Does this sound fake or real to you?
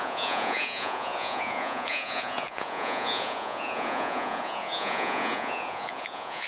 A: fake